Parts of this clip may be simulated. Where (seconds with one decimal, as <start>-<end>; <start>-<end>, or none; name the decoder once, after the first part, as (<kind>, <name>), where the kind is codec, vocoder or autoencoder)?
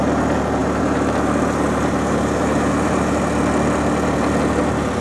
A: 0.6-3.2 (vocoder, BigVGAN v2)